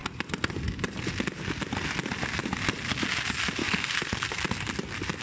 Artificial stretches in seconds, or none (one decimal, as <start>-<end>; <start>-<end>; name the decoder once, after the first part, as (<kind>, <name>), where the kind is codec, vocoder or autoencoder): 3.6-4.4 (codec, SNAC)